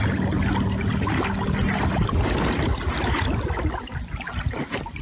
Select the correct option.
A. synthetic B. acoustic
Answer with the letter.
B